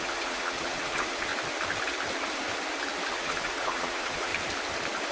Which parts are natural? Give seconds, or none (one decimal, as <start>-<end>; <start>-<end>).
1.3-3.1; 4.3-5.1